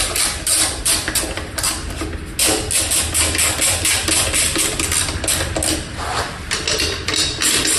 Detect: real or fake real